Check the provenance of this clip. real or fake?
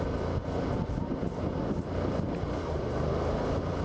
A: real